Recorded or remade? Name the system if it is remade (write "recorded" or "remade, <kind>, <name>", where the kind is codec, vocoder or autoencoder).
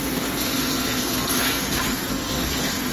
remade, codec, SNAC